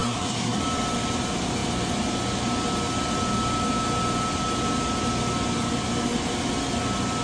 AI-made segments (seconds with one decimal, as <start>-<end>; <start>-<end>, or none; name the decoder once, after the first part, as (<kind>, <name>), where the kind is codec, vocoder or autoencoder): 0.0-0.6 (codec, SNAC)